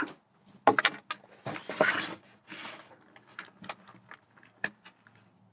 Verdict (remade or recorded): recorded